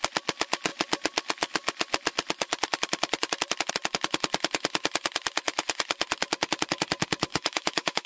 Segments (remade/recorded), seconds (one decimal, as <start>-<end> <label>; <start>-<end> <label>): 0.0-7.3 recorded; 7.3-8.1 remade